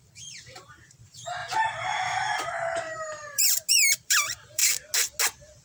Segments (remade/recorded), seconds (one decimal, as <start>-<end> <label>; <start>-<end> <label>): 0.0-4.6 remade; 4.6-5.6 recorded